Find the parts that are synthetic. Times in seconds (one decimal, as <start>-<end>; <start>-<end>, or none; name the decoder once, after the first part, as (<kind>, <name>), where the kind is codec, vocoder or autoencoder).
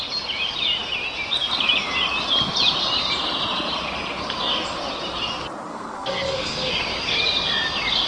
5.7-6.7 (codec, SNAC)